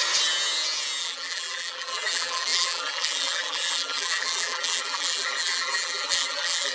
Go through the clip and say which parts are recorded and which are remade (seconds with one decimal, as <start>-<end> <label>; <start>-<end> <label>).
0.0-1.0 recorded; 1.0-6.7 remade

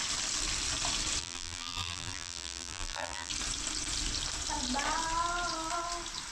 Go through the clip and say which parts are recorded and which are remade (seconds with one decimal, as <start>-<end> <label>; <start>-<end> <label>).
0.0-1.2 recorded; 1.2-3.3 remade; 3.3-6.3 recorded

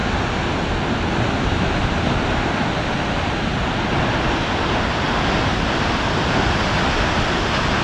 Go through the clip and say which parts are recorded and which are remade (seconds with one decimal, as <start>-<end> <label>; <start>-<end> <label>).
0.0-7.8 recorded

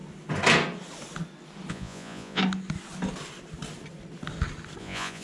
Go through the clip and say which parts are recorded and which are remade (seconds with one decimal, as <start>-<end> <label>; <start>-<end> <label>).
0.0-1.7 recorded; 1.7-2.4 remade; 2.4-4.8 recorded; 4.8-5.2 remade